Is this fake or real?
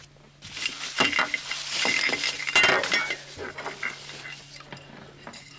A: real